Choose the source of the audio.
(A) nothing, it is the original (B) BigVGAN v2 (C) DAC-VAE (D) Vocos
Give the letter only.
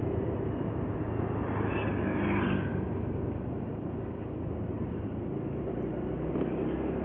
A